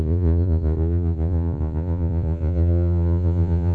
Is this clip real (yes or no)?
no